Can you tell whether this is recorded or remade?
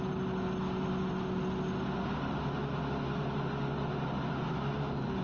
recorded